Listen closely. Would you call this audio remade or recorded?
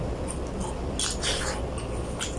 recorded